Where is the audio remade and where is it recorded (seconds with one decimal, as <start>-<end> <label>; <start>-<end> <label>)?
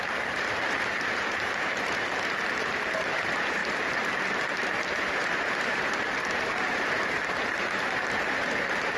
0.0-9.0 remade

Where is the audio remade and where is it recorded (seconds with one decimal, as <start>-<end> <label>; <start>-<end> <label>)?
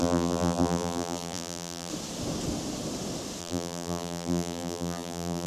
0.0-1.9 remade; 1.9-3.4 recorded; 3.4-5.5 remade